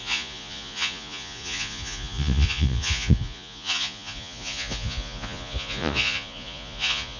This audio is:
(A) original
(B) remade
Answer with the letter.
B